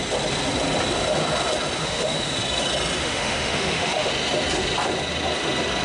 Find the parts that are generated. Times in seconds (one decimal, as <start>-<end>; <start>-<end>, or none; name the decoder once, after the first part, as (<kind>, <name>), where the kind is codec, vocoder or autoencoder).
1.8-2.3 (autoencoder, DAC-VAE); 3.0-4.1